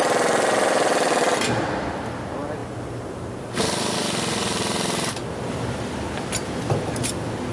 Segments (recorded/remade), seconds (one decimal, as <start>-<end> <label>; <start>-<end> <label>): 0.0-2.6 recorded; 2.6-7.1 remade; 7.1-7.5 recorded